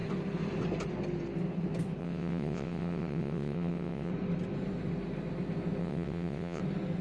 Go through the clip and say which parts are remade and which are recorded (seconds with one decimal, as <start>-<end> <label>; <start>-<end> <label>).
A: 0.0-2.0 recorded; 2.0-4.1 remade; 4.1-5.8 recorded; 5.8-6.6 remade; 6.6-7.0 recorded